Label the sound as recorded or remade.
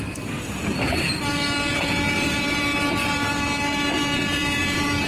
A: remade